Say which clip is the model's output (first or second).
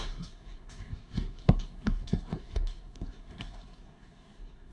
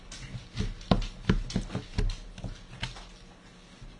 first